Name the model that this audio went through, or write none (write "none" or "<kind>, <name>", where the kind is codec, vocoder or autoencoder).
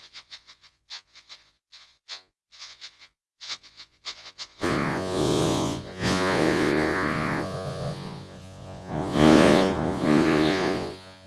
vocoder, Vocos